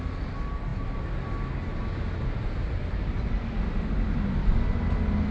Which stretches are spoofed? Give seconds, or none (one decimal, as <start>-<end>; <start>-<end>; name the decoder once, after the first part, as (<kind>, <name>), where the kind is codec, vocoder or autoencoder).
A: none